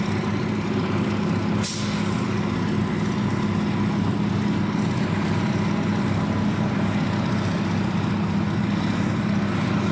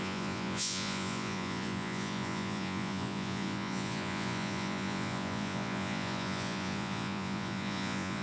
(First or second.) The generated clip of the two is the second